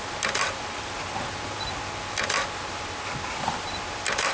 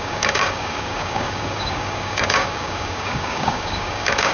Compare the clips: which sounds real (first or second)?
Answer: first